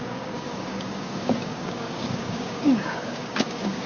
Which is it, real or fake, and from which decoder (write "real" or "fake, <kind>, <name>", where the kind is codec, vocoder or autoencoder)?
fake, codec, DAC